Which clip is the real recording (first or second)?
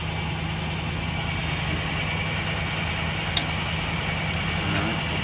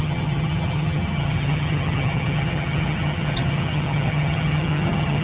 first